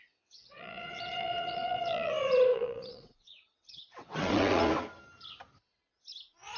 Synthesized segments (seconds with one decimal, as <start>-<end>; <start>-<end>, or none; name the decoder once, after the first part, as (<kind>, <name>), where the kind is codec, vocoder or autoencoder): 0.0-2.1 (vocoder, WaveNeXt); 2.5-4.6